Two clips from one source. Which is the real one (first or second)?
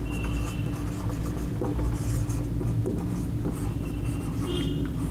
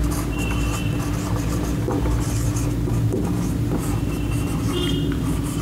first